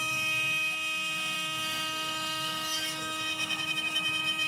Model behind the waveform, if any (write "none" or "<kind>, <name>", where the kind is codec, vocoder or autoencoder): autoencoder, DAC-VAE